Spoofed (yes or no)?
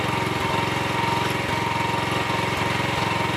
no